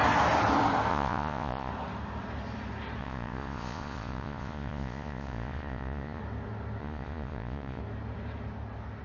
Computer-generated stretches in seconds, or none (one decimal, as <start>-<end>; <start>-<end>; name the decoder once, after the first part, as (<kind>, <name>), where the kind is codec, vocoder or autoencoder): 0.9-1.7 (vocoder, Vocos); 3.0-6.2; 6.8-7.8